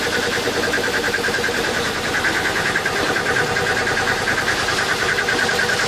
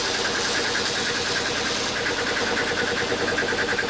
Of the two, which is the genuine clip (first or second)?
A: second